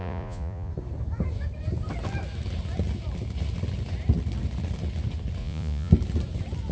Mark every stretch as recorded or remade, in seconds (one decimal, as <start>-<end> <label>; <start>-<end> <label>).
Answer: 0.0-0.7 remade; 0.7-5.4 recorded; 5.4-5.9 remade; 5.9-6.7 recorded